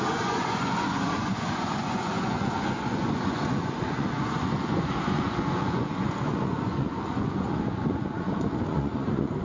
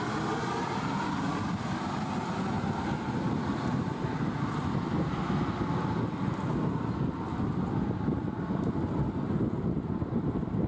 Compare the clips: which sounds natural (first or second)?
second